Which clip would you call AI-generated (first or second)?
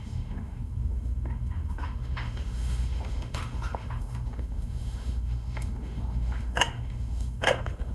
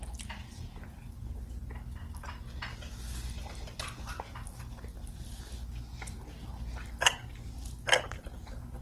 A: first